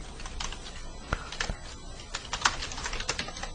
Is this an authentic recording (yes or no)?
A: yes